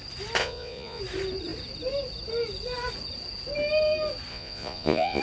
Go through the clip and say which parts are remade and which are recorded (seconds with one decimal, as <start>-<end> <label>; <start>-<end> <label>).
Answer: 0.0-0.4 recorded; 0.4-1.0 remade; 1.0-4.3 recorded; 4.3-5.2 remade